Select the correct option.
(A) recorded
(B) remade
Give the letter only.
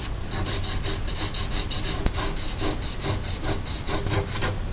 A